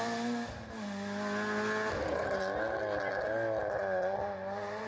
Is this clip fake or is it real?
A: real